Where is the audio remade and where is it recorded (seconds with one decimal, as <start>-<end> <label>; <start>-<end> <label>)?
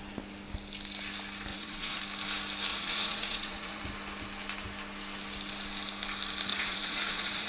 0.0-1.5 recorded; 1.5-2.0 remade; 2.0-2.7 recorded; 2.7-3.8 remade; 3.8-6.5 recorded; 6.5-7.5 remade